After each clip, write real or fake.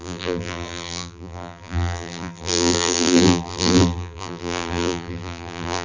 fake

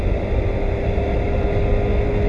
real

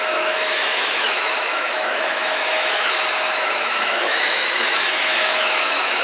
fake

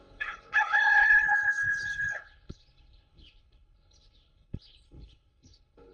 fake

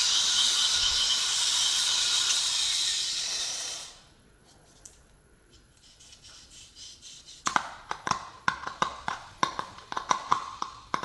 fake